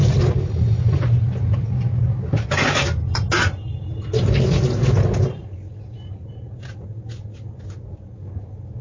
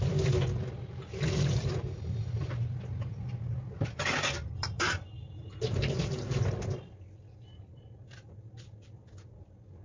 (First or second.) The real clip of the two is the first